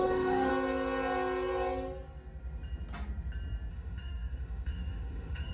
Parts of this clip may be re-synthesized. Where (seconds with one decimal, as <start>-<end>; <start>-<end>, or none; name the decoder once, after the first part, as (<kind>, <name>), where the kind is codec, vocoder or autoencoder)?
0.0-0.5 (autoencoder, DAC-VAE); 3.7-5.5